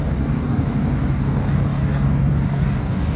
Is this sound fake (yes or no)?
yes